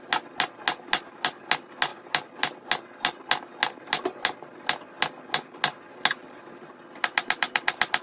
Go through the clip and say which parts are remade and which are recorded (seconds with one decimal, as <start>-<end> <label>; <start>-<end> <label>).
0.0-8.0 recorded